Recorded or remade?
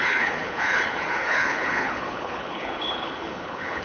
remade